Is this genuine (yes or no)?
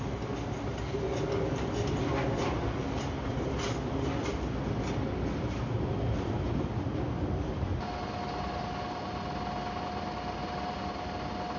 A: yes